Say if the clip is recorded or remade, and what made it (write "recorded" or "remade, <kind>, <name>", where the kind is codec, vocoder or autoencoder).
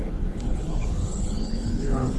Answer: remade, codec, HILCodec